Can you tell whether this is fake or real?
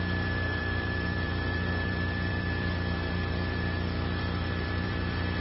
fake